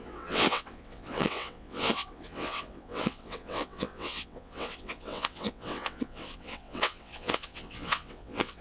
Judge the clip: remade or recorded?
remade